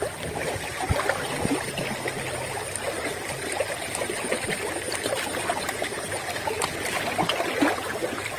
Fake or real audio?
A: real